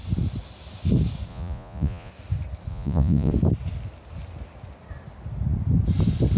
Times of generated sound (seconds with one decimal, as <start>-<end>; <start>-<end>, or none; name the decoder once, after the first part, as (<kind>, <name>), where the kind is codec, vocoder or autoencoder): 1.3-2.1 (vocoder, Vocos); 2.7-3.3